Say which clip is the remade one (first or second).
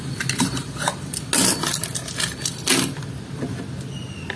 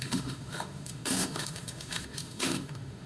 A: second